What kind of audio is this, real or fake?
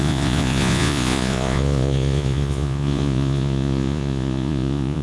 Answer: fake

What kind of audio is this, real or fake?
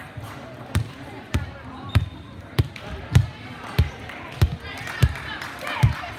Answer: real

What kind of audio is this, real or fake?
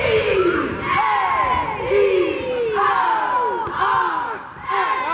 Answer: real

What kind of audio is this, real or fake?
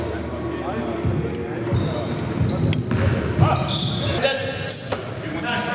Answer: real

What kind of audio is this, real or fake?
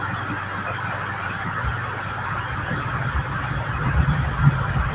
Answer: real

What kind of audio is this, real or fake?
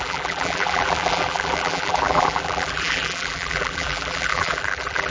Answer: fake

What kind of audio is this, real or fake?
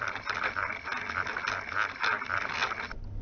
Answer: real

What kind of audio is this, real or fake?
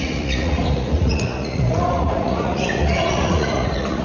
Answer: fake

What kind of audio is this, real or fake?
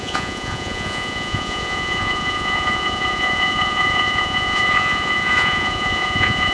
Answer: fake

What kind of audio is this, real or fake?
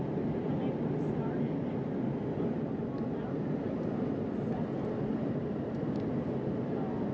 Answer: real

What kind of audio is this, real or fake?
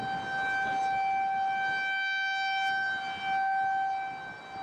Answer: real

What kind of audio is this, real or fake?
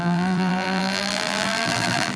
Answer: fake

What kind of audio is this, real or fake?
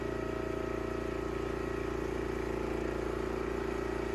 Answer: real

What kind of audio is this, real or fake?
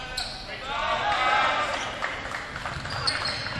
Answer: real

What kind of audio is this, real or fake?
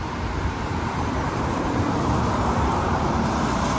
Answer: fake